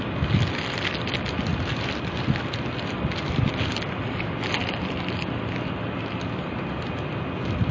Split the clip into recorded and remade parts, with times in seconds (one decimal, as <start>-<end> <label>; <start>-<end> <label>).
0.0-7.7 recorded